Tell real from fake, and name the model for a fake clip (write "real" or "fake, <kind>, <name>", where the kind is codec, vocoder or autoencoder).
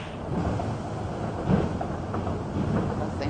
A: real